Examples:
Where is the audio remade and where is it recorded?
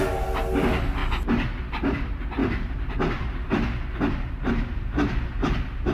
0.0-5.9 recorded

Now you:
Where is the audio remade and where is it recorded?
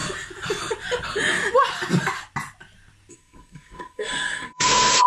0.0-3.1 recorded; 3.1-5.1 remade